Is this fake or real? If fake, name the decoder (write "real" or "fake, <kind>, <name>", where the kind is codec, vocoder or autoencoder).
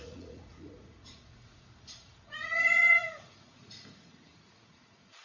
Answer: fake, vocoder, Vocos